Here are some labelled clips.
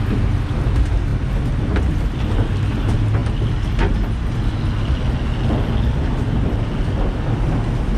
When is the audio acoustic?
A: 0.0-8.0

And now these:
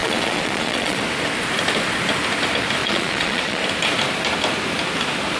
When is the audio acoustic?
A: 1.0-2.8; 3.6-5.4